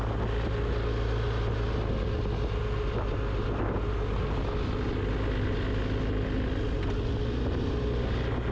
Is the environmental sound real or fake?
real